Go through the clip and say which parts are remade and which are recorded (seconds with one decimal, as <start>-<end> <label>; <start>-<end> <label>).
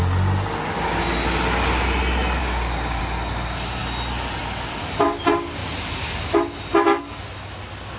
0.0-2.4 recorded; 2.4-3.0 remade; 3.0-8.0 recorded